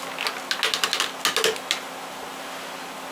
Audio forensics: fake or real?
real